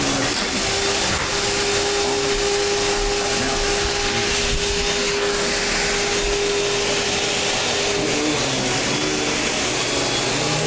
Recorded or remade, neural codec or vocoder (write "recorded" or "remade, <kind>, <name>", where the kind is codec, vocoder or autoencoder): recorded